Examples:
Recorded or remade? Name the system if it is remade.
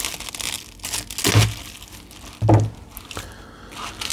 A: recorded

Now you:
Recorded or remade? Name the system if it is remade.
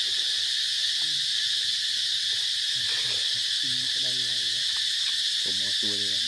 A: recorded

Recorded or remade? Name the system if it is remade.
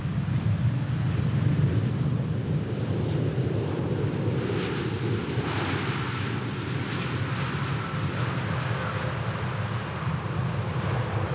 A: recorded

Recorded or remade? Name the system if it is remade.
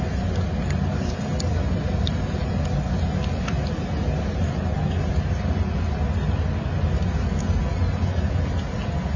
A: recorded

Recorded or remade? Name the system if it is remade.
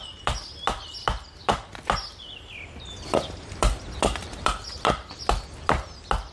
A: remade, vocoder, BigVGAN v2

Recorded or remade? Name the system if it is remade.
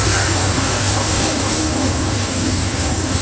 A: remade, codec, DAC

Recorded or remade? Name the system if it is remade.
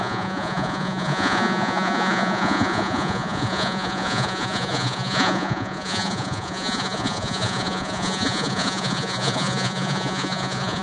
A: remade, vocoder, Vocos